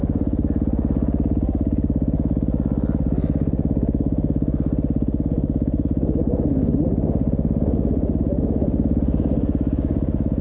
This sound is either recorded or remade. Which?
recorded